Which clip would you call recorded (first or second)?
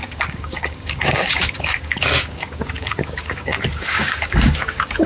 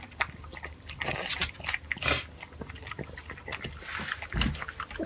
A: second